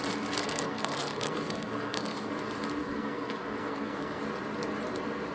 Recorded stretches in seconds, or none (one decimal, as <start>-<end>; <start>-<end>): 0.0-0.4; 2.3-2.8; 4.2-5.3